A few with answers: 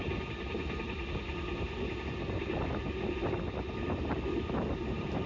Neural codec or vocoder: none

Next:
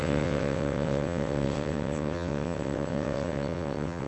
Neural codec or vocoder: vocoder, WaveNeXt